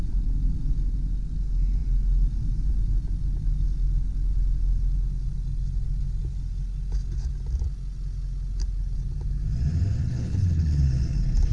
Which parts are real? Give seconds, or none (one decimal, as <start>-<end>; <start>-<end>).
0.0-10.0; 10.8-11.5